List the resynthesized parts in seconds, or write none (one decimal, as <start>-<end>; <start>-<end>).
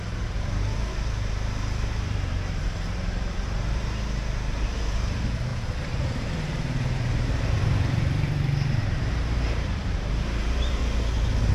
0.0-10.8